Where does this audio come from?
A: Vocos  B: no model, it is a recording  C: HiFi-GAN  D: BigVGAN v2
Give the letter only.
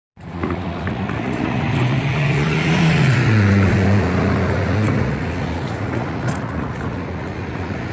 A